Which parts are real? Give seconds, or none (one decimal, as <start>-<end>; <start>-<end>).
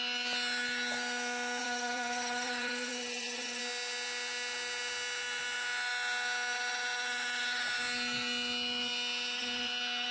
0.0-1.6; 3.6-10.1